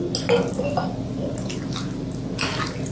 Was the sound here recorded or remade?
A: recorded